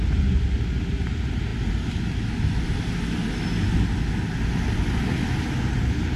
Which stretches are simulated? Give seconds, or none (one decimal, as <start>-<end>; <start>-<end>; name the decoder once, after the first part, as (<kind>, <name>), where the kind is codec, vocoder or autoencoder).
none